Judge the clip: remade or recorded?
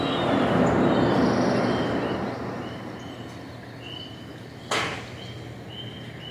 recorded